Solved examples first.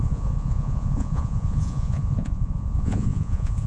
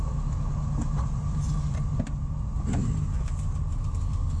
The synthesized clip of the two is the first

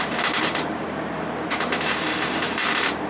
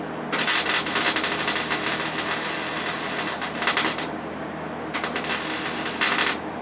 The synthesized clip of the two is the first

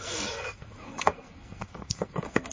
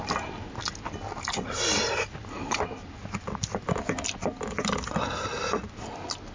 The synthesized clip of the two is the first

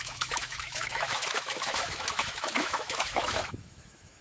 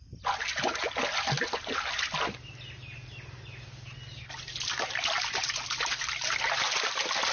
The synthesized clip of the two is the first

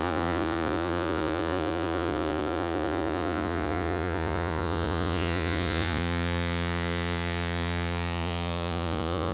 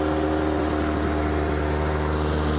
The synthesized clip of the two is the first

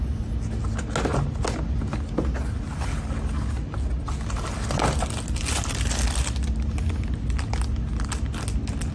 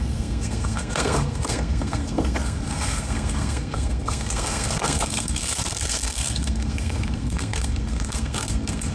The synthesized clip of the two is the second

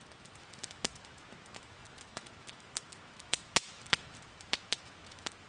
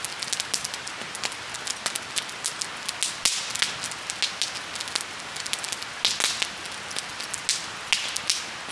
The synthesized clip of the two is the first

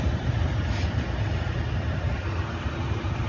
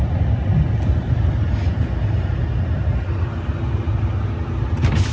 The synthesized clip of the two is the first